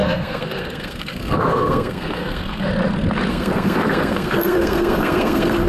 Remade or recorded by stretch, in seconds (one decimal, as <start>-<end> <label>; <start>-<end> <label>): 0.0-2.7 remade; 2.7-3.3 recorded; 3.3-5.7 remade